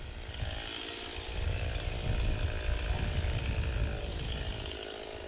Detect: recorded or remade recorded